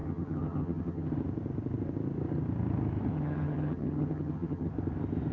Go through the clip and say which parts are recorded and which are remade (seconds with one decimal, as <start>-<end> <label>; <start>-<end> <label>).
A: 0.0-1.1 remade; 1.1-3.1 recorded; 3.1-4.7 remade; 4.7-5.3 recorded